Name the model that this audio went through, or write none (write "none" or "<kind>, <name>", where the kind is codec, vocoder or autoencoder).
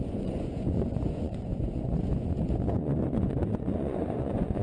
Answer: vocoder, Vocos